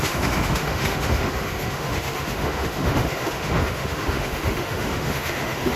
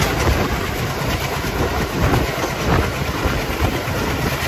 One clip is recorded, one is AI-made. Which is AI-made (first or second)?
first